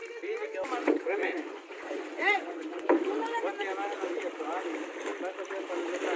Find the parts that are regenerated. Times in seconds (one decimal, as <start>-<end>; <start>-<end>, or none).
0.8-3.0